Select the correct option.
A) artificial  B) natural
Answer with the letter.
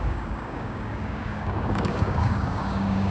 A